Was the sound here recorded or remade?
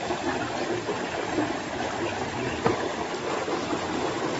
recorded